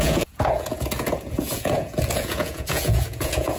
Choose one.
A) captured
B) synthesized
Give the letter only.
B